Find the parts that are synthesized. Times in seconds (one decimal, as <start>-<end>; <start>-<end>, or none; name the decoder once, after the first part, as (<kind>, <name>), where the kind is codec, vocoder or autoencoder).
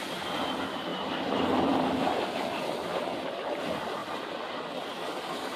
0.9-3.6 (vocoder, BigVGAN v2)